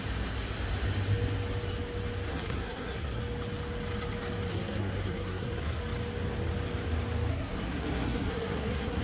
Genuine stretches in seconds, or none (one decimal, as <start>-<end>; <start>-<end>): 0.0-2.3; 3.2-4.5; 5.8-7.3